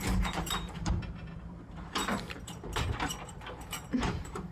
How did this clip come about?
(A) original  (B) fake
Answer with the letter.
B